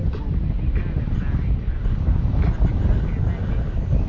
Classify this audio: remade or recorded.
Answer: recorded